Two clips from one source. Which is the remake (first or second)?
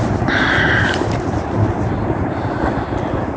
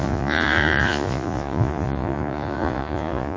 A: second